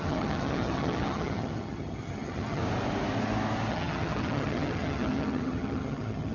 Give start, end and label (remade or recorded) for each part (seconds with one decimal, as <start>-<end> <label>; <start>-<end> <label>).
0.0-2.6 remade; 2.6-3.7 recorded; 3.7-6.3 remade

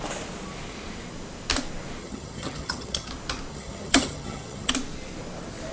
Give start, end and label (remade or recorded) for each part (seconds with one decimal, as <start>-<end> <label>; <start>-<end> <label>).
0.0-2.0 recorded; 2.0-3.1 remade; 3.1-3.5 recorded; 3.5-4.7 remade; 4.7-5.7 recorded

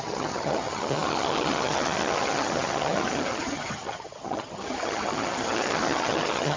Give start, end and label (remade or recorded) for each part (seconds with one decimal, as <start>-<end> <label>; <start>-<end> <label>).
0.0-6.6 remade

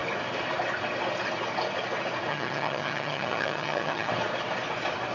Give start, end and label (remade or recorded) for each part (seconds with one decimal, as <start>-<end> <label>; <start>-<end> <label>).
0.0-2.3 recorded; 2.3-4.1 remade; 4.1-5.1 recorded